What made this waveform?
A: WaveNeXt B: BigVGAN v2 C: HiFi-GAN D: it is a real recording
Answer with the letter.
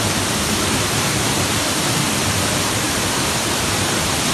B